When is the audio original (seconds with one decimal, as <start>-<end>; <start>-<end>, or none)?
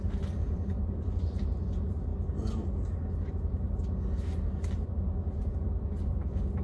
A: 2.1-3.3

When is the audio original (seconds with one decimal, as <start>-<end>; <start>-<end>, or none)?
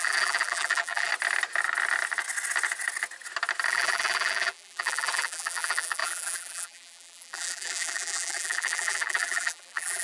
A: 1.1-3.7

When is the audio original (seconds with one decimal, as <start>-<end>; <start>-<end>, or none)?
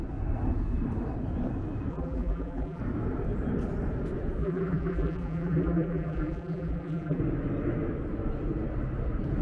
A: 0.0-1.9; 2.8-4.4; 7.2-9.4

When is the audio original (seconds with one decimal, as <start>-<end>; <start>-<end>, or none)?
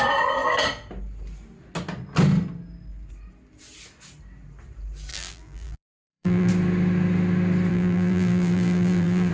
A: 0.0-5.1; 6.5-7.7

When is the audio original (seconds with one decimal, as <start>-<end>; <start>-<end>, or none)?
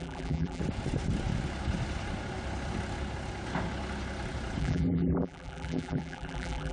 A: 0.6-4.6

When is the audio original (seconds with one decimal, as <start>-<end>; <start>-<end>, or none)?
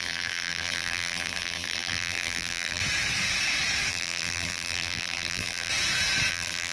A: 2.8-3.9; 5.7-6.3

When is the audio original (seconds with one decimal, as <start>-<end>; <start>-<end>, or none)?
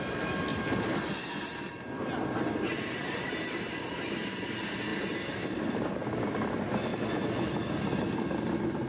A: 0.0-0.5; 4.4-4.9; 5.8-8.9